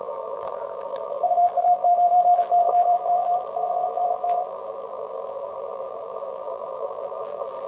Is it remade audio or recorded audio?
remade